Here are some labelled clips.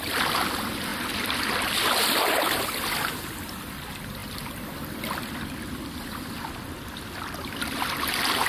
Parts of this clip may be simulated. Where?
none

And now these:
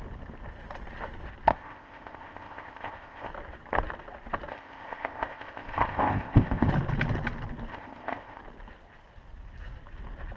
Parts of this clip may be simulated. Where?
1.5-3.3 (codec, ZipCodec); 4.5-6.7; 7.7-8.4

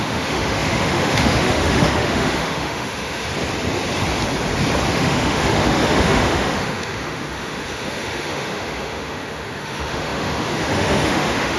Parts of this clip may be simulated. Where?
0.0-3.3 (autoencoder, DAC-VAE); 4.9-11.6

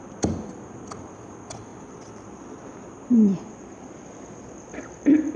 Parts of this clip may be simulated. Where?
none